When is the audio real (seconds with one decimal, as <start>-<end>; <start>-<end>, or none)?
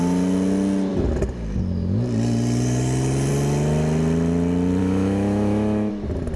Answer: 0.0-4.8; 5.9-6.4